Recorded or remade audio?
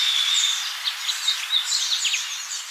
remade